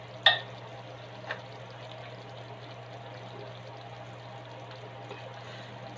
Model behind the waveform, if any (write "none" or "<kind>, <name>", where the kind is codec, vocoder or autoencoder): none